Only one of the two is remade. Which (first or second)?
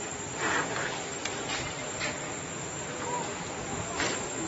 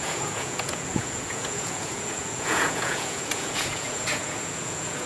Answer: second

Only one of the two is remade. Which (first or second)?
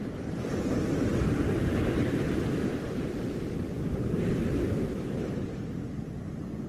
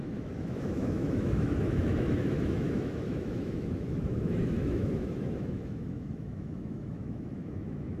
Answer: second